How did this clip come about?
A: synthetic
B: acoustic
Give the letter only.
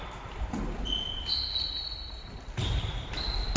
B